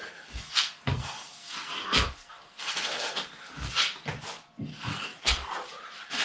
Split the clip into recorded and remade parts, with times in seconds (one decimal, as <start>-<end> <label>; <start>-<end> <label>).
0.0-3.7 remade; 3.7-4.7 recorded; 4.7-5.5 remade; 5.5-6.2 recorded